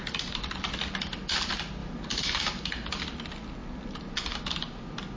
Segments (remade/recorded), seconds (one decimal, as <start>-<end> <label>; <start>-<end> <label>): 0.0-5.2 recorded